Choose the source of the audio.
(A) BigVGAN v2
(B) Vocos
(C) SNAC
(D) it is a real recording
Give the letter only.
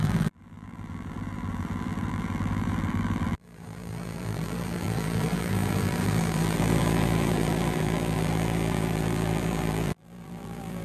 A